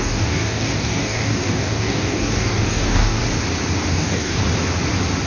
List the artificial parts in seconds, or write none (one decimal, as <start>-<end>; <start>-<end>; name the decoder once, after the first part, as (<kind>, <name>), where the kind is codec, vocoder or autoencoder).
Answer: 0.0-3.2 (codec, DAC); 3.9-4.4